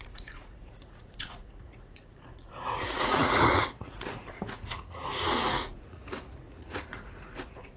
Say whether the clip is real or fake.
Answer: fake